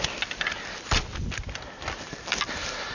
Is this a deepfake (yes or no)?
no